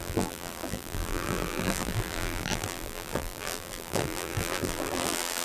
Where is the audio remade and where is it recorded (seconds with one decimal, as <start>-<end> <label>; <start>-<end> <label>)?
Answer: 0.0-5.4 remade